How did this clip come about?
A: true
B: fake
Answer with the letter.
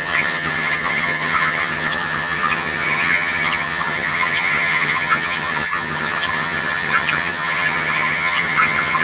B